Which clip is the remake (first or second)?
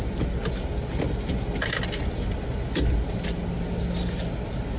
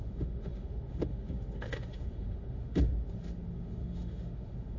second